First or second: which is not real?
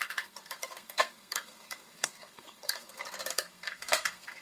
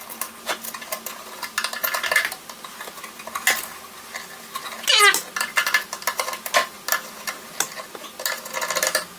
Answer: first